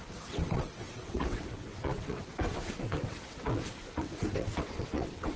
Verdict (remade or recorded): remade